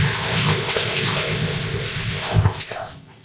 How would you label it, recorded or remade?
remade